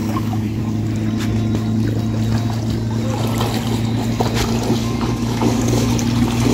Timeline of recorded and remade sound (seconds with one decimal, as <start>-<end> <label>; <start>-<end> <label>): 0.0-0.6 remade; 0.6-4.8 recorded; 4.8-5.9 remade; 5.9-6.5 recorded